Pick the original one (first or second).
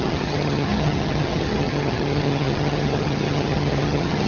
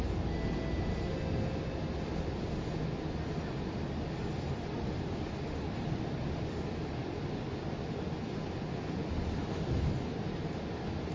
second